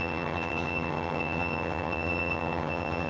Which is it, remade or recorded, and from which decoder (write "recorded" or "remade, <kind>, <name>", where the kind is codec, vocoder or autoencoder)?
remade, vocoder, HiFi-GAN